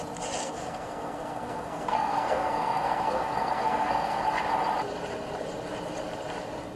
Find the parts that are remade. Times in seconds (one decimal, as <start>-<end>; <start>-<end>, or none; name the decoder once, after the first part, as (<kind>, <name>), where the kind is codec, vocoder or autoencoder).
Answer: 0.4-4.4 (codec, SNAC)